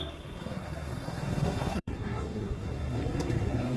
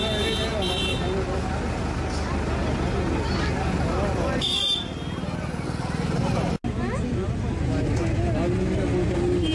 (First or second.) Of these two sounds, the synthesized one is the first